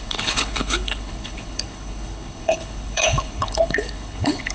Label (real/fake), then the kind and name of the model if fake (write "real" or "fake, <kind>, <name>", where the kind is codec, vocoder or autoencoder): fake, codec, HILCodec